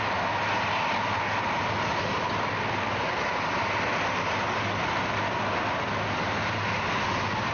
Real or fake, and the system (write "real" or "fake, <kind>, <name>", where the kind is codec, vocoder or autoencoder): real